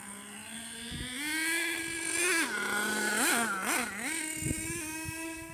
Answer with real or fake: real